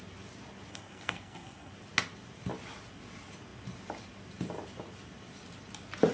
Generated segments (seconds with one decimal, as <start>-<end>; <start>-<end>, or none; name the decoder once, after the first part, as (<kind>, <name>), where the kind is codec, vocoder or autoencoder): 0.7-1.7 (codec, SNAC)